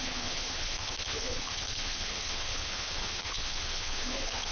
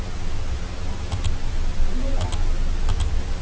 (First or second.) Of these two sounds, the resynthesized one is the first